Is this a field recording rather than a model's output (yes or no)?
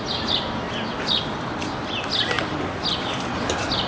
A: yes